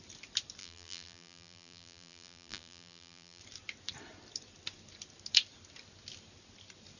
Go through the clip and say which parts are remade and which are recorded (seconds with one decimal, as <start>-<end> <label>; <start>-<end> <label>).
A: 0.0-0.6 recorded; 0.6-3.4 remade; 3.4-7.0 recorded